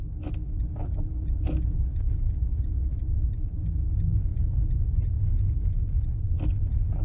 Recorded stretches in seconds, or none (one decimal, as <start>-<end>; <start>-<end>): 0.0-4.3; 5.8-7.0